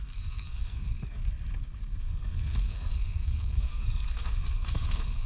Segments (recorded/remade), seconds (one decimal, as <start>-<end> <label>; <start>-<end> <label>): 0.0-1.2 remade; 1.2-2.0 recorded; 2.0-5.3 remade